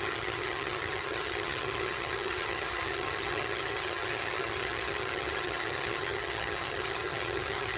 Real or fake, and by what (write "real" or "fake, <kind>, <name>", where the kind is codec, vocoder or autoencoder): fake, vocoder, HiFi-GAN